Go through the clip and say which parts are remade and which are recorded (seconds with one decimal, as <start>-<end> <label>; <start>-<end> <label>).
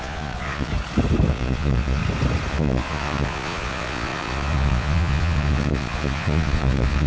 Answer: 0.0-0.7 remade; 0.7-1.3 recorded; 1.3-2.0 remade; 2.0-2.5 recorded; 2.5-7.1 remade